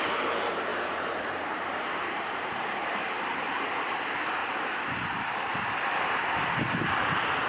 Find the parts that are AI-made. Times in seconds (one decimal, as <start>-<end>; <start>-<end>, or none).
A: 0.7-3.6; 4.4-5.7